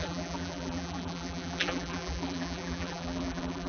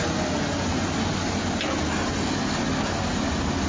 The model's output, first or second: first